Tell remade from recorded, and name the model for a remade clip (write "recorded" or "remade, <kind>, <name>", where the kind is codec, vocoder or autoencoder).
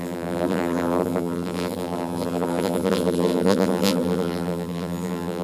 remade, vocoder, BigVGAN v2